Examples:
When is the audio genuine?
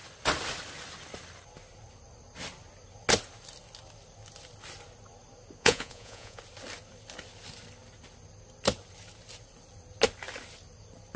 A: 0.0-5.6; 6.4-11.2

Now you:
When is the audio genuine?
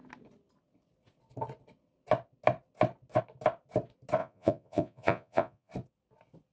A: 0.0-4.2; 5.7-6.5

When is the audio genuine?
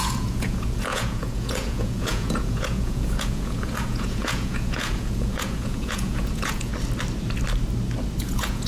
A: 6.7-8.2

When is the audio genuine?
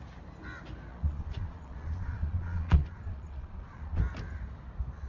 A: 0.0-0.9; 4.0-5.1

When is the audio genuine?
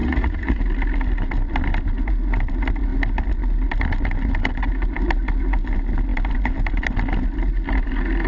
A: 0.6-8.3